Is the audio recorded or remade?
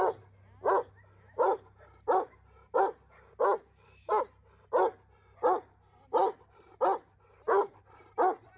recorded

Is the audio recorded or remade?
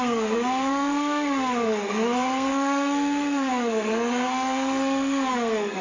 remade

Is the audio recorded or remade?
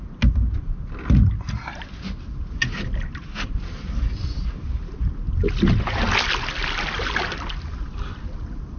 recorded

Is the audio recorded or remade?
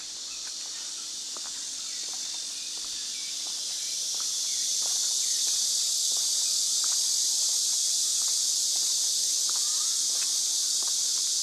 recorded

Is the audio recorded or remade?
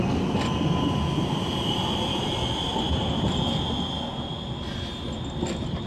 recorded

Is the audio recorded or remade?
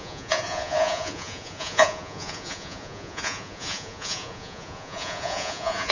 remade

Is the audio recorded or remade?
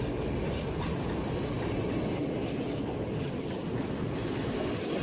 recorded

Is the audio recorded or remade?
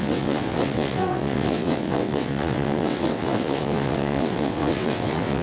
remade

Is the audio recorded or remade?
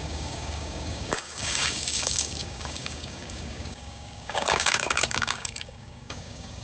remade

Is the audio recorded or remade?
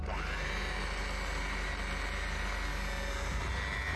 recorded